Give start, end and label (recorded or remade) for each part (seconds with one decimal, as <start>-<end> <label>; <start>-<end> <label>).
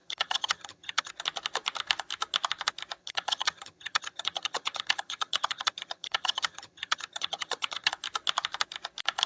0.0-1.1 remade; 1.1-3.0 recorded; 3.0-7.9 remade; 7.9-9.3 recorded